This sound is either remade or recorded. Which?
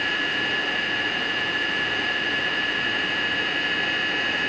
remade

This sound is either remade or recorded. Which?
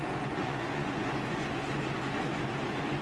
remade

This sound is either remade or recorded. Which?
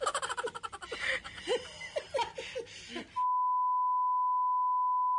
recorded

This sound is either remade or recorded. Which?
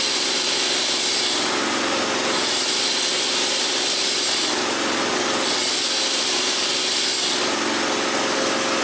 recorded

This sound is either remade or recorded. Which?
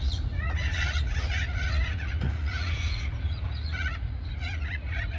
remade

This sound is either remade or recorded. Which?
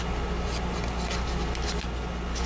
recorded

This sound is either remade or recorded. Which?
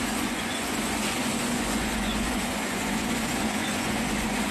remade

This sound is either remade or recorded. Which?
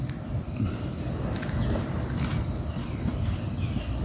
recorded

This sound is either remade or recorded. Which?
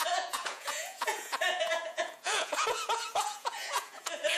remade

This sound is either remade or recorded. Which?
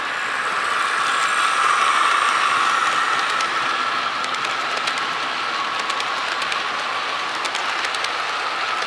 recorded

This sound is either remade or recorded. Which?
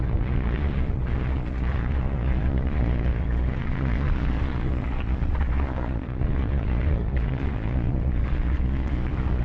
remade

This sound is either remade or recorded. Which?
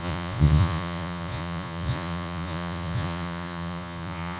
remade